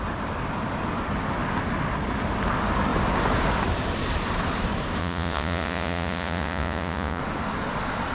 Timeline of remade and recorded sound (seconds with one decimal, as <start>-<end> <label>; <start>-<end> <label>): 0.0-5.0 recorded; 5.0-7.2 remade; 7.2-8.1 recorded